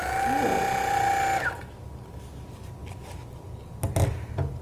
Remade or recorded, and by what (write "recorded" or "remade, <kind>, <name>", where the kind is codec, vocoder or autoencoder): recorded